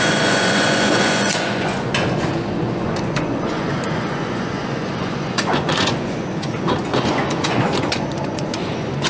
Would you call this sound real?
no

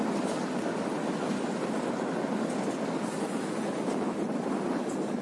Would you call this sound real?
yes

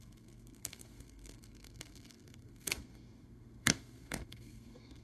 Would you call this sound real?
no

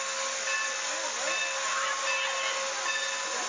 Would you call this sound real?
yes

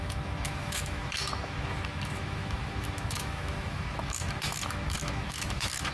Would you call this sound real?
no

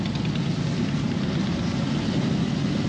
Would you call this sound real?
yes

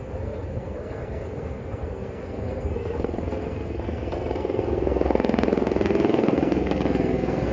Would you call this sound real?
no